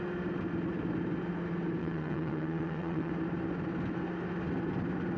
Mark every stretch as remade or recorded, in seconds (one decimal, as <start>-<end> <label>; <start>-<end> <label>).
0.0-1.8 recorded; 1.8-3.1 remade; 3.1-5.2 recorded

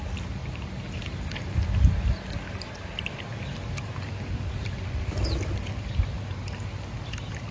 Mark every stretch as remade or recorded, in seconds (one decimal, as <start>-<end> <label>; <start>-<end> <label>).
0.0-7.5 recorded

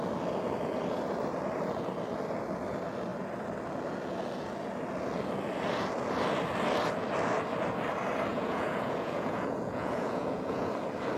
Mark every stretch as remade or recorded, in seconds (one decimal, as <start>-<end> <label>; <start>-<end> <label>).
0.0-8.3 recorded; 8.3-10.7 remade; 10.7-11.2 recorded

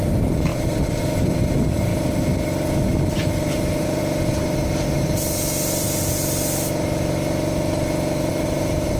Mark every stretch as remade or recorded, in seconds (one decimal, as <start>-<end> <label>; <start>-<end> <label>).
0.0-1.9 remade; 1.9-2.9 recorded; 2.9-4.0 remade; 4.0-8.3 recorded; 8.3-9.0 remade

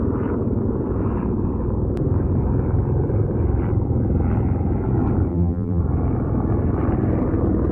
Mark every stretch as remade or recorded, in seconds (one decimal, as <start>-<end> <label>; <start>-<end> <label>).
0.0-5.3 recorded; 5.3-5.8 remade; 5.8-7.7 recorded

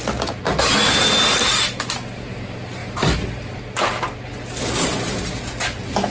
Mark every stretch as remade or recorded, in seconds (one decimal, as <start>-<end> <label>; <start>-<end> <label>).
0.0-6.1 recorded